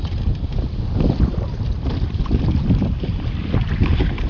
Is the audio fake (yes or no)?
no